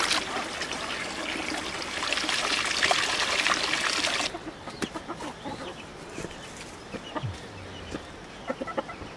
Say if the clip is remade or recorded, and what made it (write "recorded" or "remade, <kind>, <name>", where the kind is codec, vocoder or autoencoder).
recorded